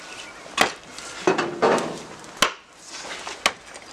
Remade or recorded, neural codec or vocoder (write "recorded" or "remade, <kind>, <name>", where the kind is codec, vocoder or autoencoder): recorded